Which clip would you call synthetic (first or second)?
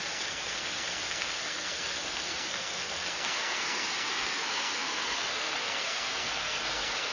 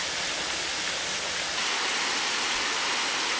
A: first